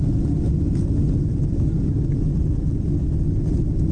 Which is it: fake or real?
real